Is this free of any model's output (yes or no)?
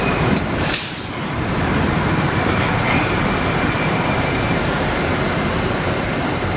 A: no